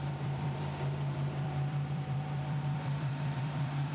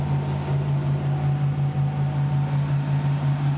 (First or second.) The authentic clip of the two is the second